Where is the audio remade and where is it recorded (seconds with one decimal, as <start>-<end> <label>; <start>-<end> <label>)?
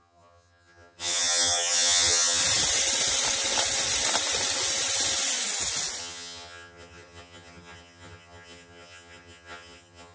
0.0-2.4 remade; 2.4-6.0 recorded; 6.0-10.1 remade